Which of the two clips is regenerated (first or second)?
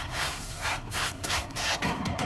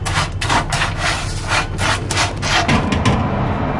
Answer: first